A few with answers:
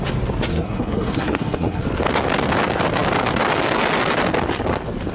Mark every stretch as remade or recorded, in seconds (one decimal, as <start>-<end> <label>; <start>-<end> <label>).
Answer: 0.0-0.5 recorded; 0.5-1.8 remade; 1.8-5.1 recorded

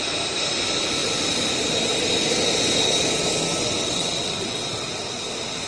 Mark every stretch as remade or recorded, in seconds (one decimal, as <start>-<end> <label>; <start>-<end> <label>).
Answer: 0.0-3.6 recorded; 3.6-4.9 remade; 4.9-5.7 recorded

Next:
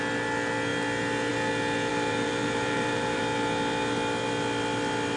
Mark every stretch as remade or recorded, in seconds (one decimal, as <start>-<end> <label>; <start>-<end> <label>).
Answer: 0.0-1.9 recorded; 1.9-3.2 remade; 3.2-5.2 recorded

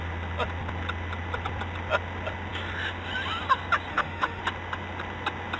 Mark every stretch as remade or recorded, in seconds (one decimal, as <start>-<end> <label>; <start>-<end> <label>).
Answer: 0.0-3.9 recorded; 3.9-4.4 remade; 4.4-5.6 recorded

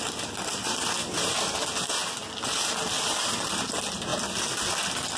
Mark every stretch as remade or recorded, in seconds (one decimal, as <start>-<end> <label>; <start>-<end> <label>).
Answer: 0.0-5.2 recorded

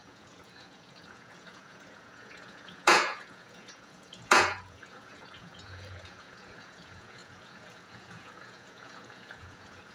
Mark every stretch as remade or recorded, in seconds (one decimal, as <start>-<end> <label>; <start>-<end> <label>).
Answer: 0.0-9.9 remade

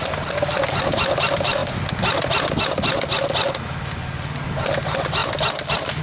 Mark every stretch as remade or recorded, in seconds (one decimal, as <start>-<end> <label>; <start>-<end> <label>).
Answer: 0.0-6.0 recorded